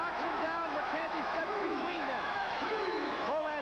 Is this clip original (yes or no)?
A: no